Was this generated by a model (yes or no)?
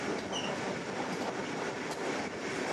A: no